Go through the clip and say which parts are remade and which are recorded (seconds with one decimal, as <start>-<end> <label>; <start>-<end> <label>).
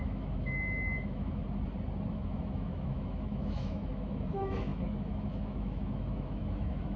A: 0.0-1.4 remade; 1.4-2.1 recorded; 2.1-7.0 remade